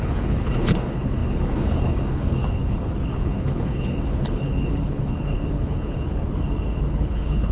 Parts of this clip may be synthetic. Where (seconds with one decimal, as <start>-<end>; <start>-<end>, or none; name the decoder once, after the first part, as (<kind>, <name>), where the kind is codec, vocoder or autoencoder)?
0.0-7.5 (codec, HILCodec)